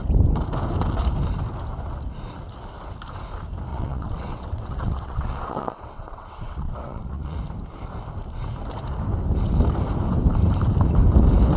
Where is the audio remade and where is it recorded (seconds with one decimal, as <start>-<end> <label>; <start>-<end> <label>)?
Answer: 0.0-3.7 recorded; 3.7-7.4 remade; 7.4-11.6 recorded